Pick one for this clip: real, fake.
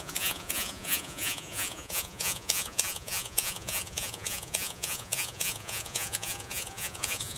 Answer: fake